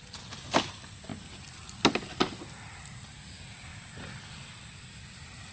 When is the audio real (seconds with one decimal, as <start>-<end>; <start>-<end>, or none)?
0.0-5.5